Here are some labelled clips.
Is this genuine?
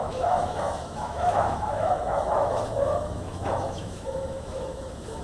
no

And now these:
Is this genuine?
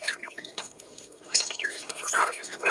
no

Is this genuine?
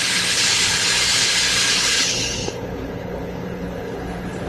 no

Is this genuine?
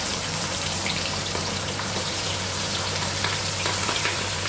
no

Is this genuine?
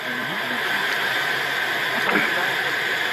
yes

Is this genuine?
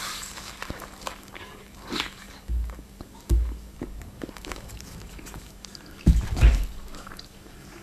no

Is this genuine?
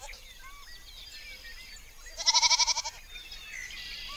yes